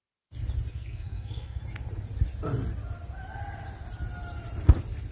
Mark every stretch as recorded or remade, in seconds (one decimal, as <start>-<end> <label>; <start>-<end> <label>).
0.0-0.7 recorded; 0.7-1.6 remade; 1.6-5.1 recorded